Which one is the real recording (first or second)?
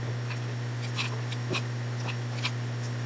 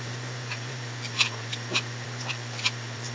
first